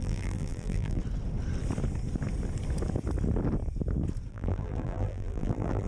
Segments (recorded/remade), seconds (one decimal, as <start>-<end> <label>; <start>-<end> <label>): 0.0-1.0 remade; 1.0-4.3 recorded; 4.3-5.9 remade